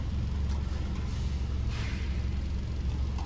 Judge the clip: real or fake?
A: real